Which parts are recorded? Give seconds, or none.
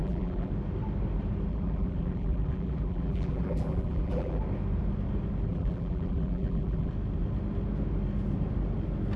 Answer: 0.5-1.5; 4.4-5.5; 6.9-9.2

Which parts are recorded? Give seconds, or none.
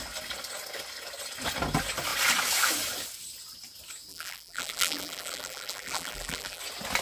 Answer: 0.0-4.1; 6.6-7.0